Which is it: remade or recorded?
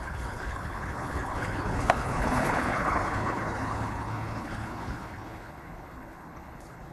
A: remade